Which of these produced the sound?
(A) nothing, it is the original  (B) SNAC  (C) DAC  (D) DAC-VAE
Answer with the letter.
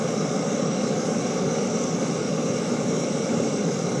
C